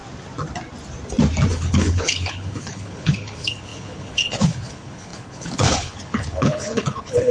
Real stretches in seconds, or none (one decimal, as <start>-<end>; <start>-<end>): 0.0-1.5